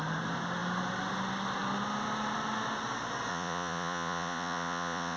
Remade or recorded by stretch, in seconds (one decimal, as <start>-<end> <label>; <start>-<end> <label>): 0.0-3.3 recorded; 3.3-5.2 remade